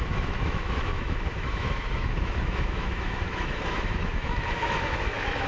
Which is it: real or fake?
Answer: fake